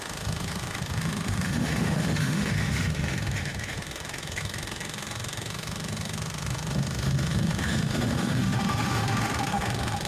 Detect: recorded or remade remade